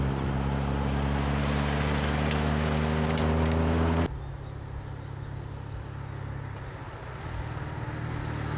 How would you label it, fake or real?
real